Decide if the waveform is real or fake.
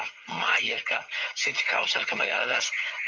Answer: fake